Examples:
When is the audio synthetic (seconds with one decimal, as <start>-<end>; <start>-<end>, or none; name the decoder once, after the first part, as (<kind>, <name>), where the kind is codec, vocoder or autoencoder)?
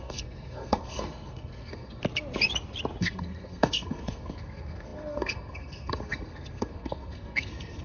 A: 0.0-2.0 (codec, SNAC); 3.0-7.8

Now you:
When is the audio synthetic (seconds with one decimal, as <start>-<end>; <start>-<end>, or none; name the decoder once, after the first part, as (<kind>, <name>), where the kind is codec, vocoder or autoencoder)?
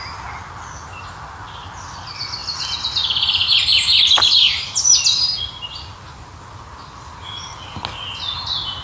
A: none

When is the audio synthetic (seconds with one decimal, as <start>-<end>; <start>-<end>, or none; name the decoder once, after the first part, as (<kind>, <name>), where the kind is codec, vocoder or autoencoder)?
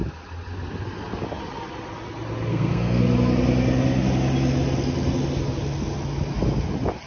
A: 2.5-3.0 (codec, SNAC)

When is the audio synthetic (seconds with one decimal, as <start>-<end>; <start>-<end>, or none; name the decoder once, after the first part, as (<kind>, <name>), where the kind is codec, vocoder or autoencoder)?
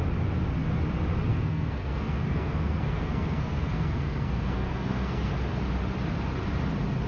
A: 1.3-5.3 (codec, SNAC)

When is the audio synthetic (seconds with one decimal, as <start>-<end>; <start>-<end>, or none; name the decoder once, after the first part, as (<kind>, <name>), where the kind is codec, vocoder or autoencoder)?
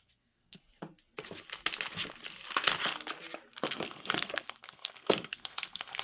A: 0.0-0.6 (codec, SNAC); 3.7-6.0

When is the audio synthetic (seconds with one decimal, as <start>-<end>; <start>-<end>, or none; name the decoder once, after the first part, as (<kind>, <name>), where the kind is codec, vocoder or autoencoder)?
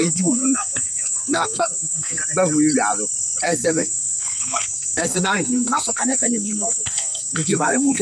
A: 0.0-2.2 (codec, SNAC); 3.4-8.0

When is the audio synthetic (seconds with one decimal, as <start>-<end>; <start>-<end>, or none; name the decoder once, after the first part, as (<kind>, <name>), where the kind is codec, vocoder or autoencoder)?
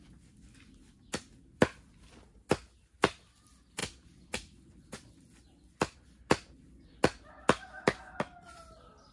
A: none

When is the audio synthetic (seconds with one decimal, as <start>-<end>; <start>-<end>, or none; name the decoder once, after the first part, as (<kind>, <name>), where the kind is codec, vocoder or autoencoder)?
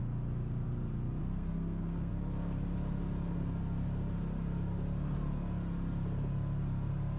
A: 1.2-2.1 (codec, SNAC)